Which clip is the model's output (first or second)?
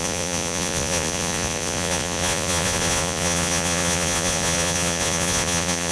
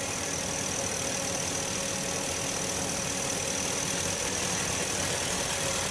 first